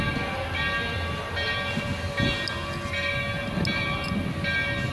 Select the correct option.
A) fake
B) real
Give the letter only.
B